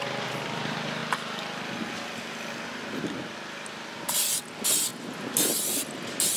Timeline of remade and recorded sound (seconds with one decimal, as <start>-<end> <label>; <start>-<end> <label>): 0.0-4.9 recorded; 4.9-6.4 remade